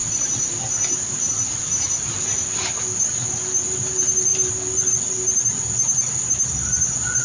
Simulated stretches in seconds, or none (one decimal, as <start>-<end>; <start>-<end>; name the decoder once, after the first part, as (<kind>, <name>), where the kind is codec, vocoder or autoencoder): none